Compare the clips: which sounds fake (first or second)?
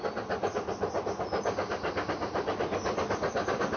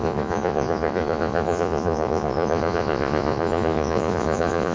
second